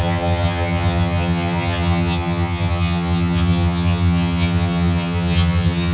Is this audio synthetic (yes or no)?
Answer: yes